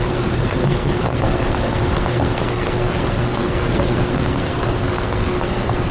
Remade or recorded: remade